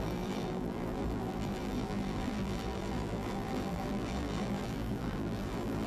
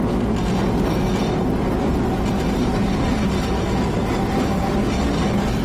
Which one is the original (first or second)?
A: second